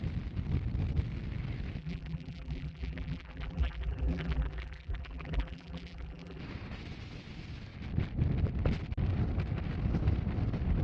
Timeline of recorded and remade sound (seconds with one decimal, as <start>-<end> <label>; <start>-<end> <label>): 0.0-1.8 recorded; 1.8-6.4 remade; 6.4-10.8 recorded